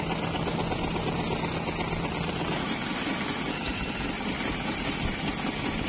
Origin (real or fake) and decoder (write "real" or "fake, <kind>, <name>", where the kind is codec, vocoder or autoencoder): real